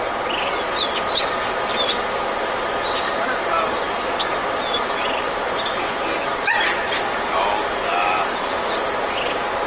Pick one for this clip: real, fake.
real